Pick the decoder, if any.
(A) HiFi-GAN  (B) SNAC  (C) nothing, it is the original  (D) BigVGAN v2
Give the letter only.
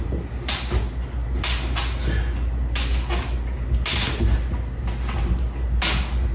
C